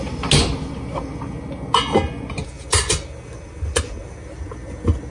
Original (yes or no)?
yes